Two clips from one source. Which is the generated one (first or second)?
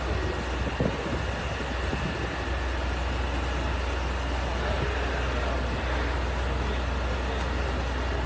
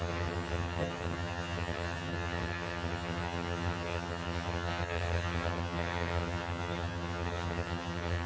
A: second